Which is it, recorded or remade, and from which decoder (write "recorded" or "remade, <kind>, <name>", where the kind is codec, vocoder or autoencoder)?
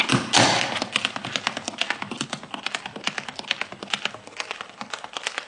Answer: recorded